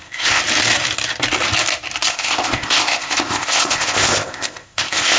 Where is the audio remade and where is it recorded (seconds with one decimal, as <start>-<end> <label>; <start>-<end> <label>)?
0.0-0.4 remade; 0.4-2.1 recorded; 2.1-5.2 remade